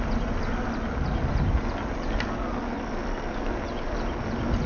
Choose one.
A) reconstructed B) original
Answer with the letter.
B